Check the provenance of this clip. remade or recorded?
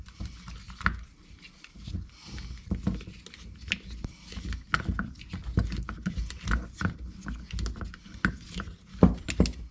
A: recorded